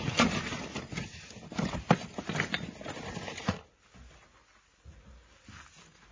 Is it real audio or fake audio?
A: real